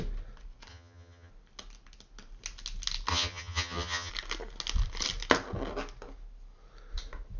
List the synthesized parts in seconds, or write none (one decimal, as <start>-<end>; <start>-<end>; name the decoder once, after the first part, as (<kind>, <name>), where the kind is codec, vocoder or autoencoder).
0.7-1.3 (vocoder, HiFi-GAN); 3.1-4.1